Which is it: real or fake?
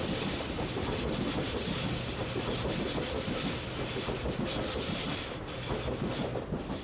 real